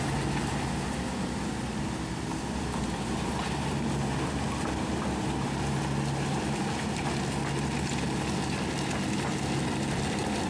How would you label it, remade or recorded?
recorded